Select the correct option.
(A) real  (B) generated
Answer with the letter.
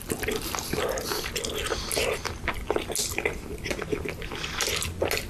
A